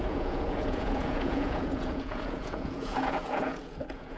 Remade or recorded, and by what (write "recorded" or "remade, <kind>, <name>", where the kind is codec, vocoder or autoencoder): remade, vocoder, Vocos